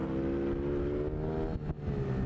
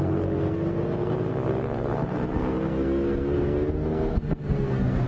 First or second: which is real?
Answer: first